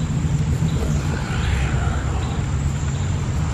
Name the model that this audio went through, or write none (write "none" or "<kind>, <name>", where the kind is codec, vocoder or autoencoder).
none